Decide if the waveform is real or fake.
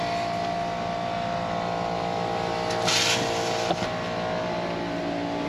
real